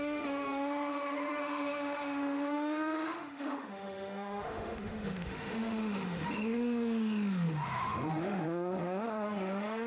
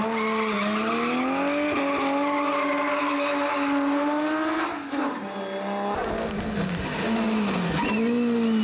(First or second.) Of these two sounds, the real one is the second